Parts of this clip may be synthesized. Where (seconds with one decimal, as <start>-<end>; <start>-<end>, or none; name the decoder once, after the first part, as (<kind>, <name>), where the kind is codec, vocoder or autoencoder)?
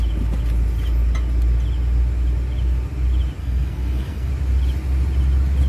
3.4-4.3 (codec, SNAC)